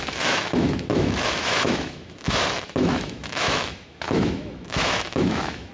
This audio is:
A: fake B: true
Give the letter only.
A